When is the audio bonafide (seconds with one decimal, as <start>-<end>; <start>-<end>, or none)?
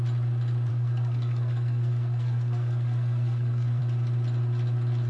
0.0-0.7; 3.8-5.1